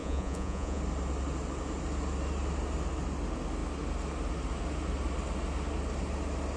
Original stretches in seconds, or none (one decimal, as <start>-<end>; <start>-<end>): 0.8-6.6